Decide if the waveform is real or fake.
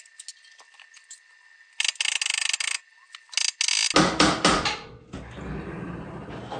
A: real